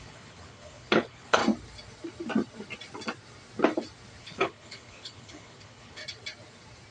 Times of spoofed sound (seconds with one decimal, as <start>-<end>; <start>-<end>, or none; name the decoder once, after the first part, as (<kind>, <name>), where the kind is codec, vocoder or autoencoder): 0.0-1.4 (codec, HILCodec); 4.2-6.0